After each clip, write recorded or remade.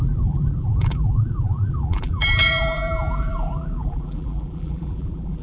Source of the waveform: remade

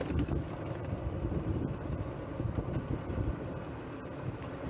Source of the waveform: remade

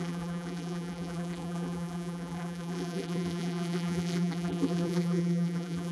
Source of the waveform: remade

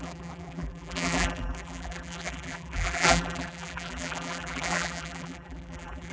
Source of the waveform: remade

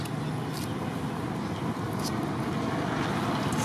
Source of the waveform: recorded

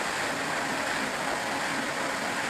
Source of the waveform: recorded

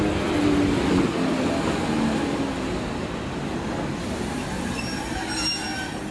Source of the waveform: recorded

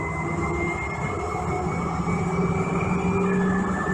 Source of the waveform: recorded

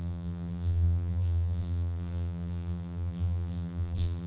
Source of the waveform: remade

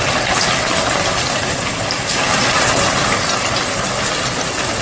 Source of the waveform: recorded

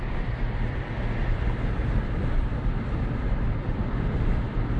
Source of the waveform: remade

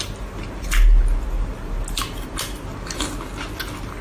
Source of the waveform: recorded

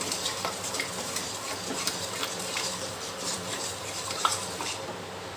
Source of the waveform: remade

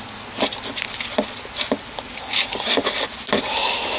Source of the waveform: recorded